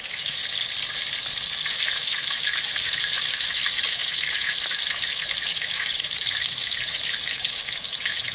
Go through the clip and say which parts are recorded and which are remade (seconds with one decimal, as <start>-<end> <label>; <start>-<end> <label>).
0.0-0.4 remade; 0.4-1.7 recorded; 1.7-8.3 remade